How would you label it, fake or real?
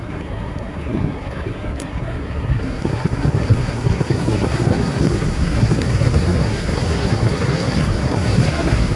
fake